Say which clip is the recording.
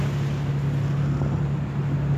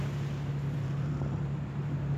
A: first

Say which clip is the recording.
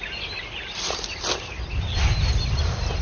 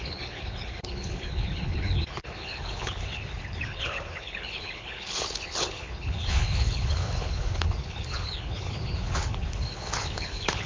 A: first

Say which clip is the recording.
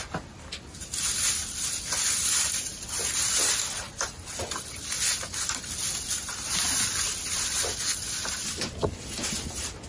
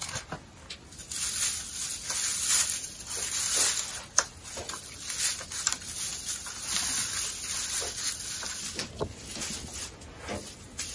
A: second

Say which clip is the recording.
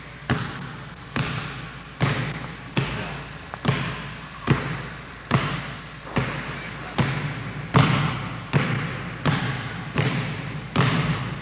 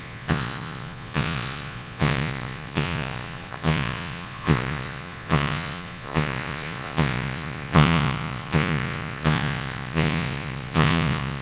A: first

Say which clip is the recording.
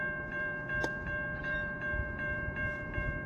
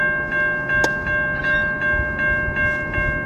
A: second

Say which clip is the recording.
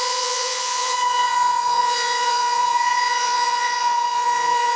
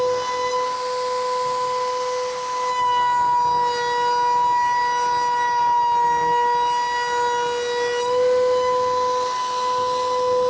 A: second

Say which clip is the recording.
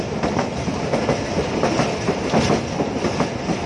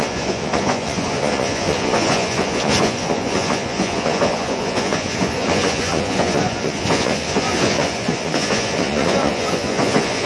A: first